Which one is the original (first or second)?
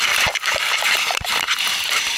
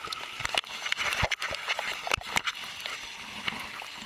second